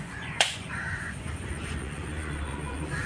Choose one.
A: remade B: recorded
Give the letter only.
A